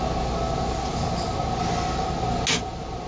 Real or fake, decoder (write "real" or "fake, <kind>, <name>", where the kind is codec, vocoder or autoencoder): real